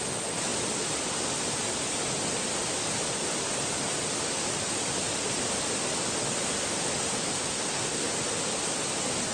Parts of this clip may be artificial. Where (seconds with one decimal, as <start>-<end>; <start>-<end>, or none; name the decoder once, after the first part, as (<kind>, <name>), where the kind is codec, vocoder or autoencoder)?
7.5-8.1 (codec, SNAC)